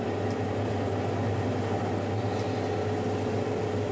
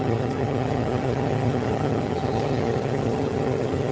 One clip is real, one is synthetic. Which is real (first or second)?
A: first